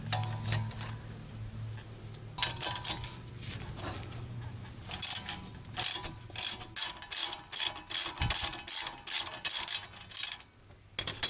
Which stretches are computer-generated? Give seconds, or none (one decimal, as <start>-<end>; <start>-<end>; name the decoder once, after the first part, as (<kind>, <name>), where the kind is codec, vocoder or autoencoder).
none